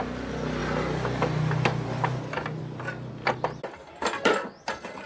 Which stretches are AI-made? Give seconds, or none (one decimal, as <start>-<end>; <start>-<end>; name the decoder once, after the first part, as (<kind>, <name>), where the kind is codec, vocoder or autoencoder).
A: none